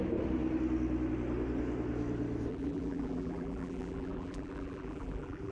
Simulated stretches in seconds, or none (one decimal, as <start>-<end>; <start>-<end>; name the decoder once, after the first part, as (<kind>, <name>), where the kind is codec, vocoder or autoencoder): 2.5-5.5 (vocoder, BigVGAN v2)